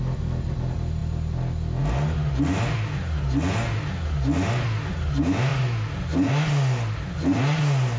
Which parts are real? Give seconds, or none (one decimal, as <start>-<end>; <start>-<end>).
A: 0.0-8.0